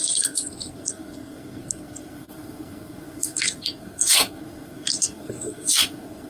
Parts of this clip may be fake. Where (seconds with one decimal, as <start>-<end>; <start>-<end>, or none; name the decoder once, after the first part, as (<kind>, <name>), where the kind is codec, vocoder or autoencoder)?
0.0-6.3 (codec, SNAC)